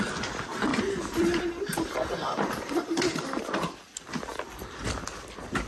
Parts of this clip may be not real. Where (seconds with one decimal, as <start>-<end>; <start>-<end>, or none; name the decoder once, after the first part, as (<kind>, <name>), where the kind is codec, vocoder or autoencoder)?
0.7-3.4 (vocoder, BigVGAN v2)